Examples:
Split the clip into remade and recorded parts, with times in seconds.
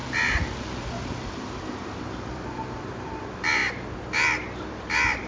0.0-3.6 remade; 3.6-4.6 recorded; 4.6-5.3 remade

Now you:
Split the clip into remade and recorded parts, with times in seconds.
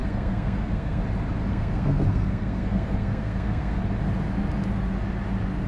0.0-1.0 remade; 1.0-1.5 recorded; 1.5-3.8 remade; 3.8-5.7 recorded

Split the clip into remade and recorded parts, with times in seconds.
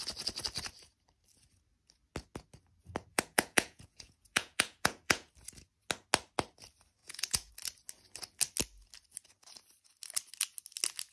0.0-3.1 recorded; 3.1-5.3 remade; 5.3-7.0 recorded; 7.0-7.5 remade; 7.5-11.1 recorded